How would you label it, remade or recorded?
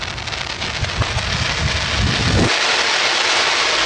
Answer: recorded